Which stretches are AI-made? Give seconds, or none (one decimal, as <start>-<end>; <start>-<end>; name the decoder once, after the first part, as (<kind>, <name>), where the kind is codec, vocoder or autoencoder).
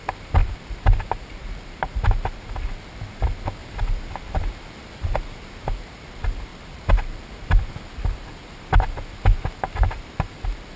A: 0.4-2.5 (vocoder, BigVGAN v2); 3.6-5.7; 6.5-7.7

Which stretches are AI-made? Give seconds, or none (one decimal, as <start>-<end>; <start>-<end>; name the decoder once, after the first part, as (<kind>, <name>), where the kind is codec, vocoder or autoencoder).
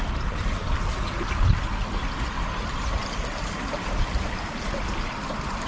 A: none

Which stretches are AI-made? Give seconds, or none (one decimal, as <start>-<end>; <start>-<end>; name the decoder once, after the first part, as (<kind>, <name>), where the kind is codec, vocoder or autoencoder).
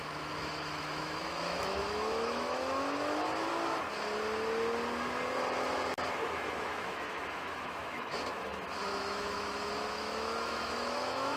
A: 0.0-3.5 (autoencoder, DAC-VAE); 6.3-8.5; 9.0-11.4